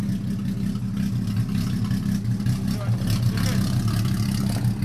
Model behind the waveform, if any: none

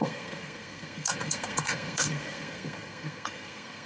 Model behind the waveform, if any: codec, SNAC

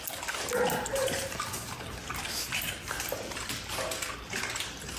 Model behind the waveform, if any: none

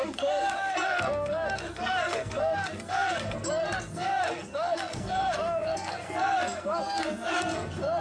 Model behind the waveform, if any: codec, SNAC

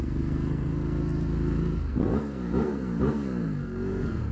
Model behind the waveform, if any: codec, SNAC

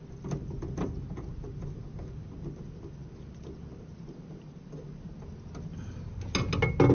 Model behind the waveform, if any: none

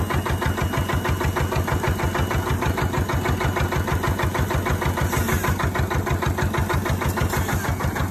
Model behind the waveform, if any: none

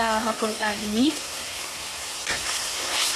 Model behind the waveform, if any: codec, SNAC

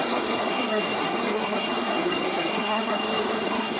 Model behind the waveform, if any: codec, SNAC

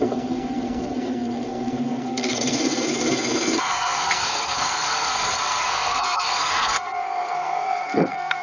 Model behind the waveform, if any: codec, SNAC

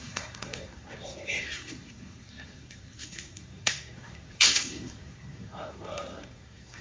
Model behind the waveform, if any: codec, SNAC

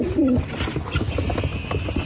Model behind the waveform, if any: none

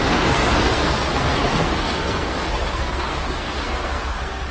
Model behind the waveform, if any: codec, SNAC